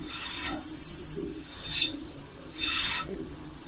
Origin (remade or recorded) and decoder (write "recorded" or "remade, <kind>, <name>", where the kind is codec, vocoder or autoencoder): remade, vocoder, HiFi-GAN